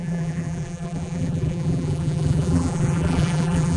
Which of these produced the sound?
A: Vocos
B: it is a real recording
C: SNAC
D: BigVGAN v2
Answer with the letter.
D